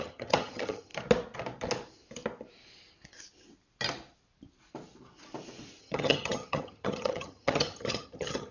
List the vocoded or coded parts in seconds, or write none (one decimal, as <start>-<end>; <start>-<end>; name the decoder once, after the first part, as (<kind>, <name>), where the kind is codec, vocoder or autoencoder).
0.0-0.9 (vocoder, HiFi-GAN); 5.8-8.5